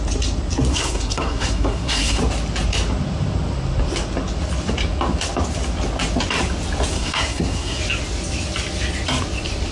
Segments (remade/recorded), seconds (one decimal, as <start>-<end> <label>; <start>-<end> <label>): 0.0-0.7 recorded; 0.7-2.2 remade; 2.2-6.9 recorded; 6.9-7.8 remade; 7.8-9.7 recorded